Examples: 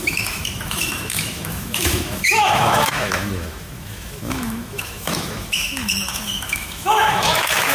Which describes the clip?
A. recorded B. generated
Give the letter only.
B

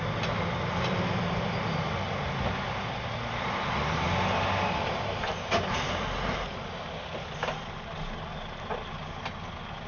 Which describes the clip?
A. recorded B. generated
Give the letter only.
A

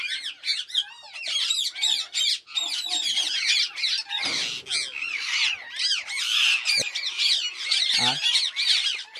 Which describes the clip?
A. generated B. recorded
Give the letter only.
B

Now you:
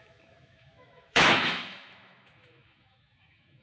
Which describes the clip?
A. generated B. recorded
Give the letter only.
A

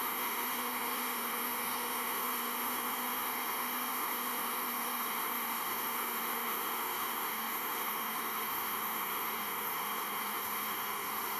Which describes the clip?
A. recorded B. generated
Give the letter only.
B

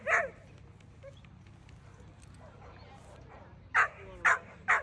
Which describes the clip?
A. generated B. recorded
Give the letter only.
B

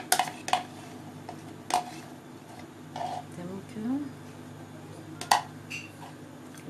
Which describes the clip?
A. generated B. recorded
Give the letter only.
B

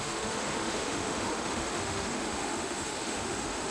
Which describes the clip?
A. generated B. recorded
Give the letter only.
A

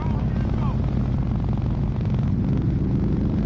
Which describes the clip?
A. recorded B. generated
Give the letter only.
A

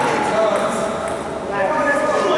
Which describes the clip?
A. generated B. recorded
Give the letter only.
B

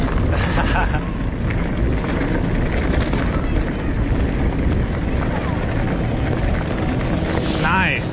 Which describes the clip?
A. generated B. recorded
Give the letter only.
B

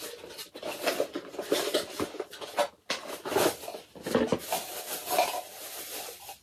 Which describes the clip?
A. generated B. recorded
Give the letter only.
B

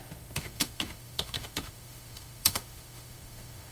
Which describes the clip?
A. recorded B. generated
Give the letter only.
B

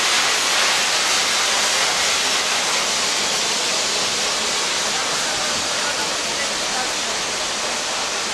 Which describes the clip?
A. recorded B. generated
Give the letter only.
A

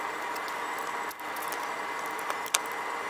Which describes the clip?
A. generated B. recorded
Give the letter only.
B